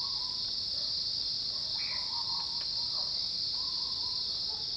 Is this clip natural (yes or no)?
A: yes